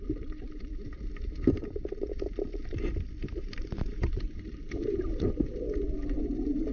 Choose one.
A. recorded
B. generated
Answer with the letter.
B